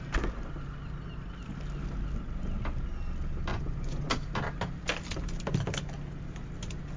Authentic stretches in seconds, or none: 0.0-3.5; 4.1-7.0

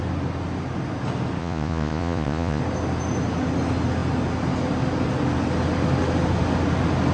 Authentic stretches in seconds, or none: 0.0-1.4; 2.6-7.1

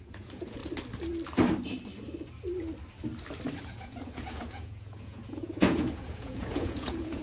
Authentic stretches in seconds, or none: 0.6-3.6

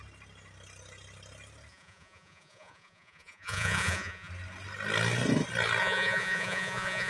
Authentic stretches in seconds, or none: 0.0-1.7; 4.3-5.8

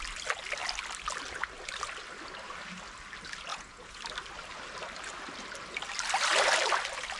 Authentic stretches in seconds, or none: 0.0-3.5; 4.0-7.2

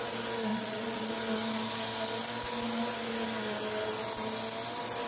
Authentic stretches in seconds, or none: 0.0-0.5; 1.1-5.1